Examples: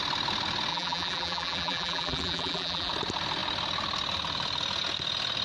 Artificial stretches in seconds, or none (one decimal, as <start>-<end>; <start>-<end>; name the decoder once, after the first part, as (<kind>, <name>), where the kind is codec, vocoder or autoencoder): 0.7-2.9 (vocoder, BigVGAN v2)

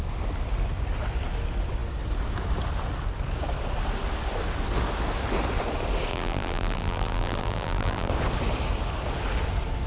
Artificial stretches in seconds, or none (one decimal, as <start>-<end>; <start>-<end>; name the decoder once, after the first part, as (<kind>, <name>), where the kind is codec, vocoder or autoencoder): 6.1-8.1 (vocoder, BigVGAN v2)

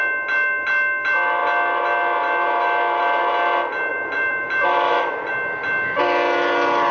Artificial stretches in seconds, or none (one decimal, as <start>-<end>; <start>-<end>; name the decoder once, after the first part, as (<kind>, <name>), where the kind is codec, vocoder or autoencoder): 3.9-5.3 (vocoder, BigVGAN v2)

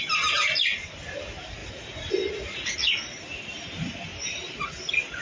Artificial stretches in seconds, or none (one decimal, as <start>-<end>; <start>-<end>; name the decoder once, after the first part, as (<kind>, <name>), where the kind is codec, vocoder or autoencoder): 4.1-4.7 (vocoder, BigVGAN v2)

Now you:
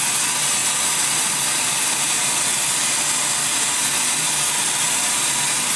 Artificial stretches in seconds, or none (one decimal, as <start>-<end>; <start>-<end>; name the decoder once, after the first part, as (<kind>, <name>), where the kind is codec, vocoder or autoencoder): none

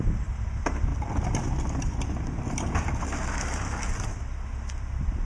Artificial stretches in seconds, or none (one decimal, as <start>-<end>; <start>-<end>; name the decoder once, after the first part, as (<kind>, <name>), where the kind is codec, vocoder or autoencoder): none